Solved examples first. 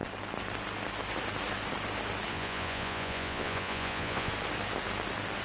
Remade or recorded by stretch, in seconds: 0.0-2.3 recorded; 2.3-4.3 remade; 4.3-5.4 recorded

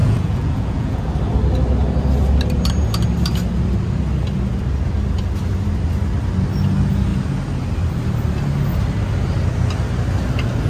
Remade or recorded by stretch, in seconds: 0.0-1.1 remade; 1.1-10.7 recorded

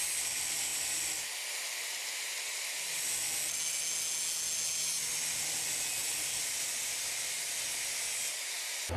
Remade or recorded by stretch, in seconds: 0.0-9.0 recorded